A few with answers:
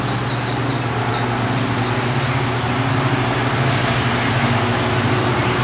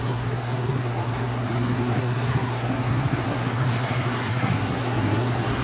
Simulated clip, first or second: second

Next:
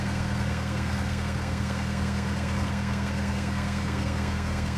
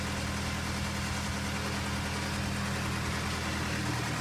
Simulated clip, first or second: first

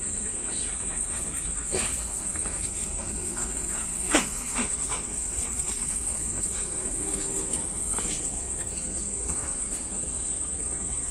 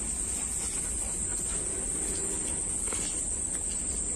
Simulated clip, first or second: first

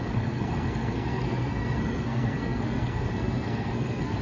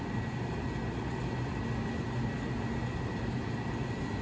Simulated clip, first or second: first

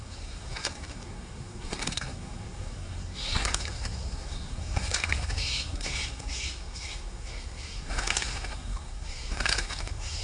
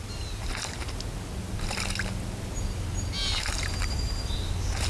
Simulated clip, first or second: first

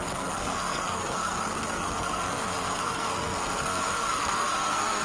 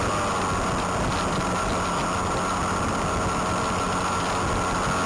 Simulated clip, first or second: first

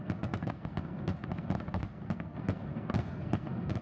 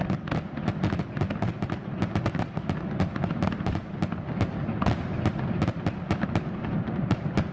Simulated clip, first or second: first